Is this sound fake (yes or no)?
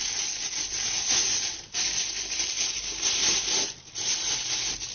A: no